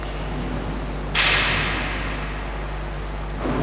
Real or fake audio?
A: real